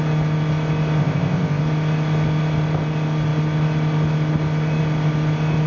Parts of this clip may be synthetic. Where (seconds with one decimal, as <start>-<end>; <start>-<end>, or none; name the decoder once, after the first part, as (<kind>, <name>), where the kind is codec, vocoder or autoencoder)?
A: 1.0-1.6 (codec, ZipCodec)